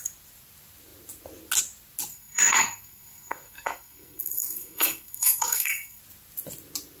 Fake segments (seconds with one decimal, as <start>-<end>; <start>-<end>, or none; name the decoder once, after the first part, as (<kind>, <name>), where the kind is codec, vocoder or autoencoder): 2.1-6.0 (codec, SNAC)